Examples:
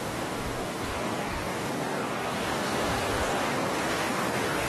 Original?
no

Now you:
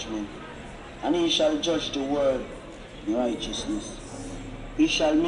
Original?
yes